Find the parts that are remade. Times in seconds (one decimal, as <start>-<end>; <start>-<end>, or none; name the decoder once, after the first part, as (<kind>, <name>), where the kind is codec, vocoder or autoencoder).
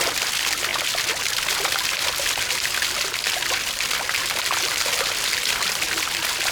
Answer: none